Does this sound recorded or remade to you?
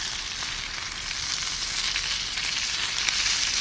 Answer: recorded